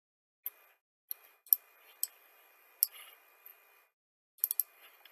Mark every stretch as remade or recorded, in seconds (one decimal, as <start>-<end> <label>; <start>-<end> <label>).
0.0-5.1 recorded